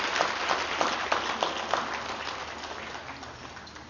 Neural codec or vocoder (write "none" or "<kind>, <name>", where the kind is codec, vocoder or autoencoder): none